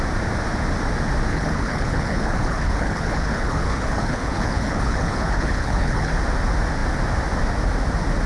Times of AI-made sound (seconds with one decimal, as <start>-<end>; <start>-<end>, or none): 1.3-6.1